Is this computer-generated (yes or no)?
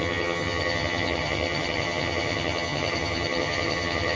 yes